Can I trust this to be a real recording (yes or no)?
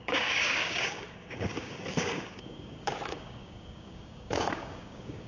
no